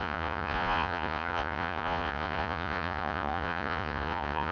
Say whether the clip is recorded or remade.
remade